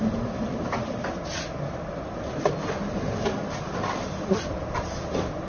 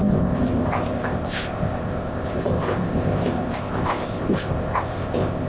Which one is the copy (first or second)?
second